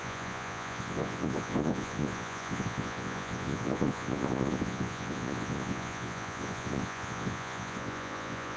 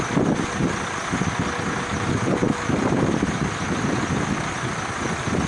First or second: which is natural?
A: second